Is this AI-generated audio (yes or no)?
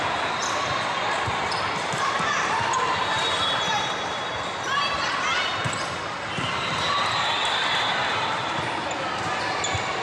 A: no